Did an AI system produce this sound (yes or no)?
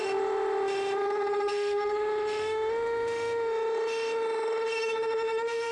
yes